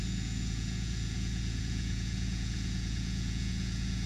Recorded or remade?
remade